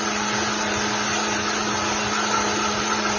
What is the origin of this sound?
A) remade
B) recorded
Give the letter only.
B